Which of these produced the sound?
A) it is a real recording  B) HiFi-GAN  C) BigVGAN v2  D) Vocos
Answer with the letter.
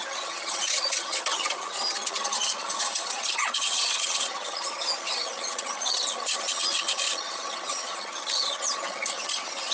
B